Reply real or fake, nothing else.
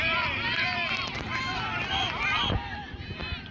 fake